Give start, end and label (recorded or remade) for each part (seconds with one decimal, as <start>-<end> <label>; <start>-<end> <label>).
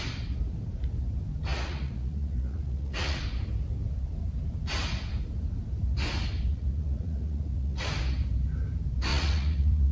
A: 0.0-1.5 recorded; 1.5-3.2 remade; 3.2-6.5 recorded; 6.5-7.9 remade; 7.9-9.1 recorded; 9.1-9.9 remade